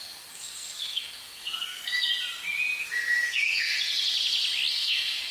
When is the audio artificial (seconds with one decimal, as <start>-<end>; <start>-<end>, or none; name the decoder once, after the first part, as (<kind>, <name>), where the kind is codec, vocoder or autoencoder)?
0.0-2.1 (codec, SNAC); 2.8-3.7; 4.7-5.3